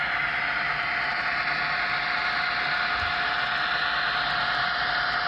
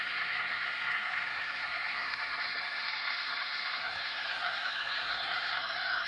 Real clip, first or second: first